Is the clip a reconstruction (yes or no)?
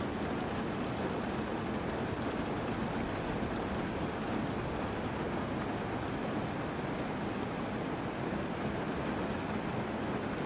no